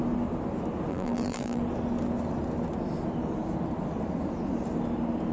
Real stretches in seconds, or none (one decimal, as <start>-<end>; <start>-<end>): 0.0-0.9; 1.6-5.3